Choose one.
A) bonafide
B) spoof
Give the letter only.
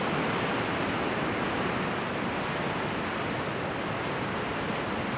A